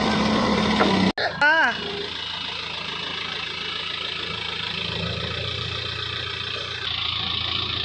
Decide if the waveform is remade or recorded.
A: recorded